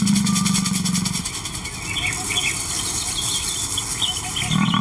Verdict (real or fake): real